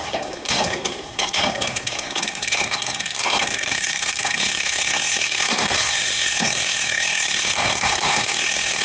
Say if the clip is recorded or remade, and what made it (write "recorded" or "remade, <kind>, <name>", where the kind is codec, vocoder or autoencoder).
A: remade, codec, SNAC